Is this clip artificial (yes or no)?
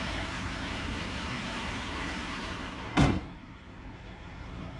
yes